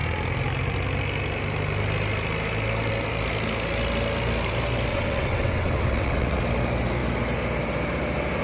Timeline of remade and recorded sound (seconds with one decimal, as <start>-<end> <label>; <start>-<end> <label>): 0.0-4.9 recorded; 4.9-6.4 remade; 6.4-8.4 recorded